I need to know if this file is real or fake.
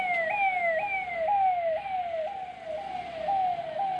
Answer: real